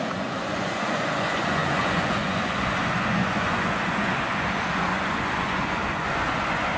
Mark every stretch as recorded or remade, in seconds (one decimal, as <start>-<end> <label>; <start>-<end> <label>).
0.0-6.8 remade